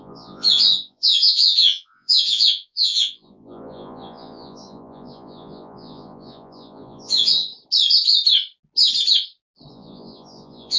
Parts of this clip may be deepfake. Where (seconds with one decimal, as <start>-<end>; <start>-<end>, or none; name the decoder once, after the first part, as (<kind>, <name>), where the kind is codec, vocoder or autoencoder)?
0.0-7.5 (vocoder, Vocos); 9.7-10.8